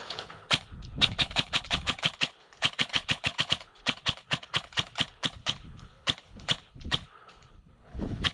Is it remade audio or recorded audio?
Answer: remade